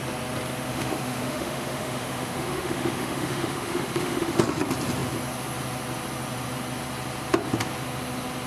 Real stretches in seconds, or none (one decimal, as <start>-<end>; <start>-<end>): 0.0-0.7; 4.4-8.5